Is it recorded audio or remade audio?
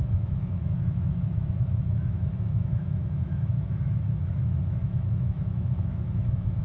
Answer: remade